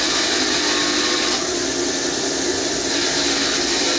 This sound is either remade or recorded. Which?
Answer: recorded